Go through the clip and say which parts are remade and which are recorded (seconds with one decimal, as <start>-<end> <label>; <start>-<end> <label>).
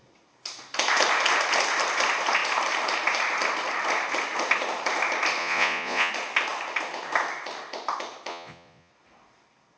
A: 0.0-5.4 recorded; 5.4-6.1 remade; 6.1-8.3 recorded; 8.3-8.9 remade; 8.9-9.8 recorded